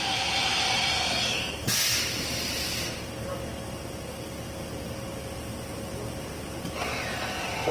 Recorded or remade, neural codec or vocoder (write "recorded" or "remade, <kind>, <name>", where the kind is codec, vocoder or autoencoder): recorded